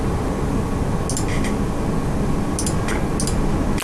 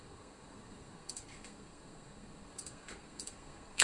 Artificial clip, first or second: second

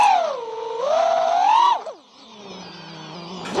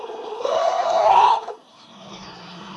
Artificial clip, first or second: second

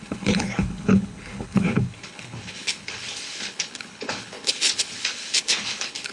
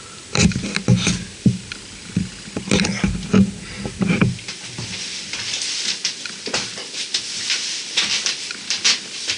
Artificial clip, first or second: first